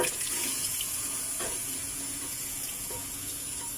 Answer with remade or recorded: remade